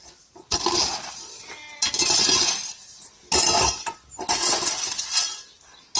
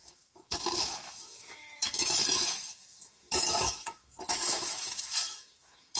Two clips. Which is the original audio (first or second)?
first